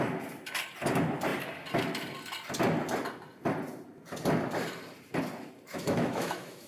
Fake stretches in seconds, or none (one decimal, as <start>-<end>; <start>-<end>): 5.7-6.7